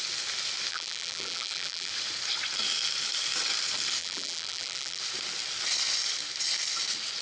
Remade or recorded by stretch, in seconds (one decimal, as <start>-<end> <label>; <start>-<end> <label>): 0.0-0.7 recorded; 0.7-1.9 remade; 1.9-4.0 recorded; 4.0-5.0 remade; 5.0-7.2 recorded